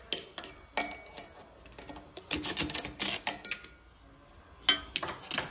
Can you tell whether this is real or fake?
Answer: real